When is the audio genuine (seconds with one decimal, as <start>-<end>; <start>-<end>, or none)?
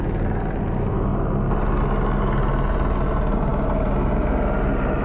0.0-5.0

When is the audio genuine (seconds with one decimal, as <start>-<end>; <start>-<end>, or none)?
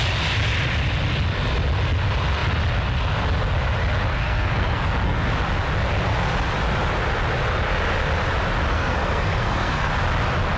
0.0-4.1; 5.3-8.7; 9.9-10.6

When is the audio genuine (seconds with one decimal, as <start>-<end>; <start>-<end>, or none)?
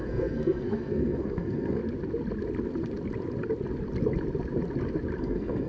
1.8-5.2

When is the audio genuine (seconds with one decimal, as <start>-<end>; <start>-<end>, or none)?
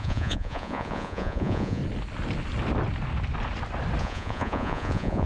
1.8-4.0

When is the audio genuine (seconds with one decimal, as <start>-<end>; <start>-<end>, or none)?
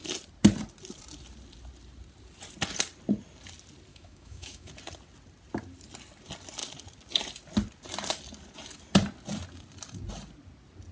0.0-3.9; 4.7-10.9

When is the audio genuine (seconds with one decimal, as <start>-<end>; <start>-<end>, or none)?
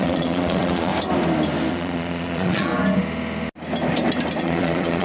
0.9-1.7; 2.7-4.4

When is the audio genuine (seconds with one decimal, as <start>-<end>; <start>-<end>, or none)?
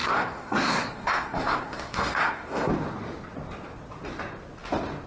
2.7-5.1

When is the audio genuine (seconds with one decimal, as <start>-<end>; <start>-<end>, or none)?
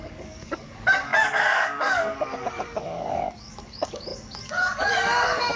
none